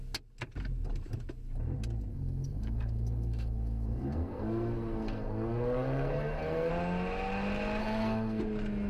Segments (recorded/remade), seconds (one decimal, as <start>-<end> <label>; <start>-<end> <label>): 0.0-2.1 recorded; 2.1-6.7 remade; 6.7-7.8 recorded; 7.8-8.4 remade; 8.4-8.9 recorded